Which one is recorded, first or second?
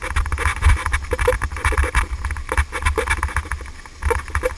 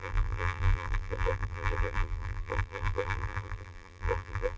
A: first